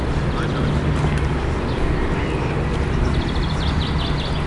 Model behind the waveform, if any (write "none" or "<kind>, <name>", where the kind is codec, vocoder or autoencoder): none